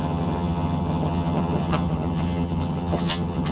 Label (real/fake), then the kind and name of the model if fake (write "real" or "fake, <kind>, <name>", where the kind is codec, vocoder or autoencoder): fake, vocoder, HiFi-GAN